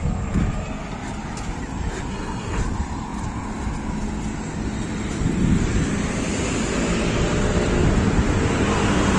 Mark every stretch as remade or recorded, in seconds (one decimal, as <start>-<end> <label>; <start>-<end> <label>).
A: 0.0-2.1 recorded; 2.1-2.6 remade; 2.6-9.2 recorded